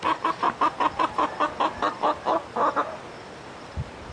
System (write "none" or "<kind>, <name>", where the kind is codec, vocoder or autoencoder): none